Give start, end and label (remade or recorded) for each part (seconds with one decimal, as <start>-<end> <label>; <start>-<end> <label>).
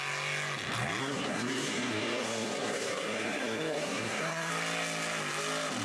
0.0-1.0 recorded; 1.0-4.5 remade; 4.5-5.8 recorded